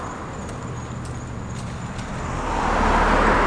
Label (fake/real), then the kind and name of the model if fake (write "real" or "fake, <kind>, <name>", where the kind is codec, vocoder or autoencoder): fake, vocoder, BigVGAN v2